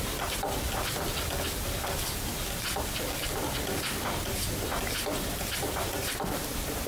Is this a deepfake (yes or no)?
no